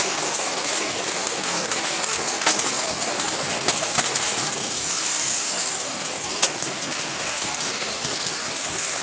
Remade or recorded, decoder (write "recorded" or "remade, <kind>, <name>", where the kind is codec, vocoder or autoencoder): remade, codec, DAC